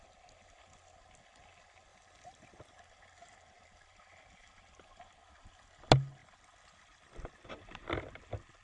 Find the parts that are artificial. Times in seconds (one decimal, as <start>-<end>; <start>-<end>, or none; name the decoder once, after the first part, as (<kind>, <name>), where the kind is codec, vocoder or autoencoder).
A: 1.9-2.8 (vocoder, BigVGAN v2); 6.2-7.5